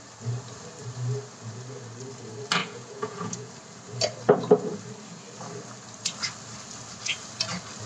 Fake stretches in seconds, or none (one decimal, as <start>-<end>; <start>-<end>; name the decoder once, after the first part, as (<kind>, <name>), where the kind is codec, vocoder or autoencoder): 2.6-3.5 (vocoder, Vocos)